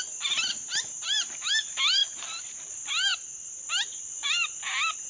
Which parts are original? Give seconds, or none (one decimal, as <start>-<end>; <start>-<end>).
0.0-5.1